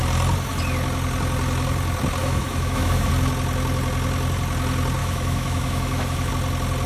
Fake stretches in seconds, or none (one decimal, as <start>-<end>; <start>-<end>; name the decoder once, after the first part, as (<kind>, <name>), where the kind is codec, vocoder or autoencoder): 2.2-3.1 (autoencoder, DAC-VAE); 5.0-6.3